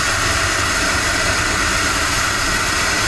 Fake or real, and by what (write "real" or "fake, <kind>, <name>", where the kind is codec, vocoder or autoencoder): fake, vocoder, BigVGAN v2